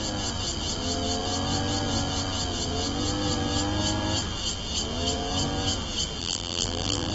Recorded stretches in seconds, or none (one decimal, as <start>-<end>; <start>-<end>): 0.0-6.2